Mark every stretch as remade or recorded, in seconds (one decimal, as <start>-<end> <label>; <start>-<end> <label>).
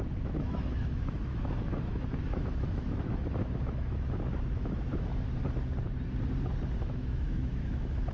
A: 0.0-5.1 remade; 5.1-6.8 recorded; 6.8-8.1 remade